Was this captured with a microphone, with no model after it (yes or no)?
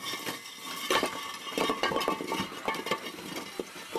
yes